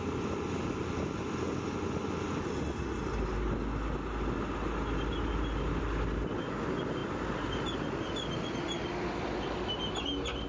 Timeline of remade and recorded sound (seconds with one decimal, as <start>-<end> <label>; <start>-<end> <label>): 0.0-10.5 recorded